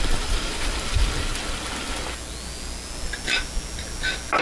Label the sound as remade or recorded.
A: recorded